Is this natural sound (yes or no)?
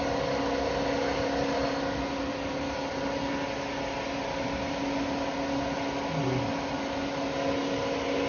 yes